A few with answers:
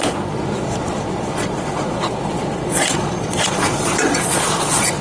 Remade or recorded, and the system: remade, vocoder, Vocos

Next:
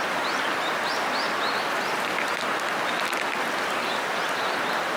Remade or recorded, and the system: recorded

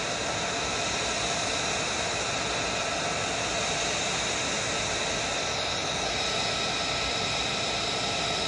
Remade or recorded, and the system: recorded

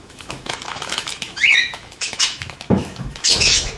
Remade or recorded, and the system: remade, autoencoder, DAC-VAE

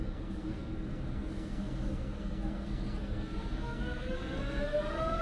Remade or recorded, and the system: remade, codec, SNAC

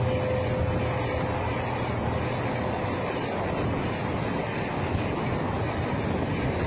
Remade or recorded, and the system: recorded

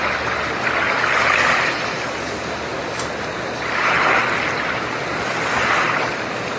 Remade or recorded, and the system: recorded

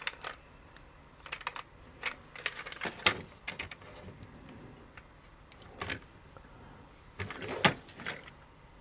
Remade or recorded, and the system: recorded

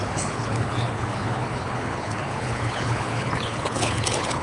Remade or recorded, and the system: remade, codec, HILCodec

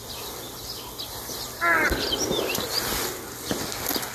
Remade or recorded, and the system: recorded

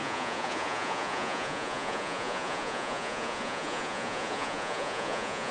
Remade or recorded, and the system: remade, vocoder, Vocos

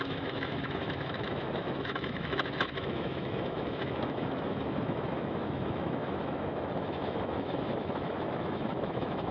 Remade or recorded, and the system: remade, autoencoder, DAC-VAE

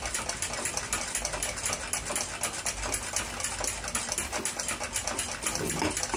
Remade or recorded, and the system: recorded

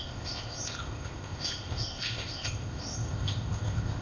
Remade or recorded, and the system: remade, codec, ZipCodec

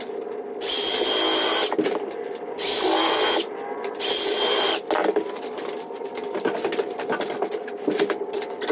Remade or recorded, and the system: recorded